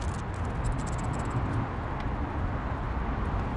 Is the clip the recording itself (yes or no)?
yes